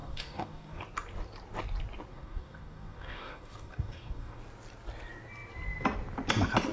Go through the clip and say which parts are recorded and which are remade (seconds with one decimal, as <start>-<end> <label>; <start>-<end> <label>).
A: 0.0-0.8 remade; 0.8-2.1 recorded; 2.1-4.4 remade; 4.4-6.7 recorded